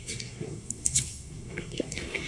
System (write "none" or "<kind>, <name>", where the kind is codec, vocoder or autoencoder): codec, SNAC